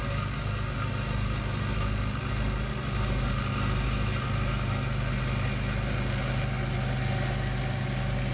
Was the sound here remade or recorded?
recorded